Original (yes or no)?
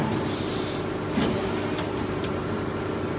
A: yes